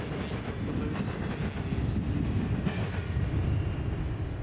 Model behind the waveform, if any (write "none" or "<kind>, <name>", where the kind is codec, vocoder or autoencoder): none